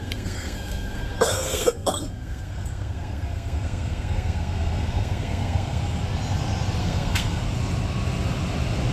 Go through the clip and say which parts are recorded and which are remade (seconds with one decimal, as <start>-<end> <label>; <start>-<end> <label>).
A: 0.0-5.8 remade; 5.8-6.8 recorded; 6.8-7.4 remade; 7.4-8.9 recorded